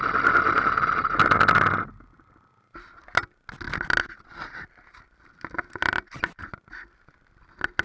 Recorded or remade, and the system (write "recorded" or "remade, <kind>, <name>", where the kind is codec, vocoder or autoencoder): recorded